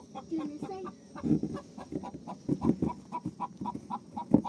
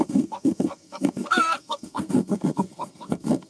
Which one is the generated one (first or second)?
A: second